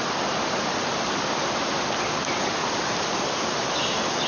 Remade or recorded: remade